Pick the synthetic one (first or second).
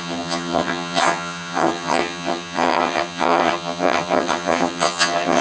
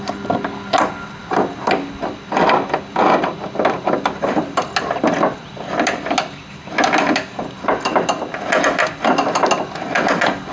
first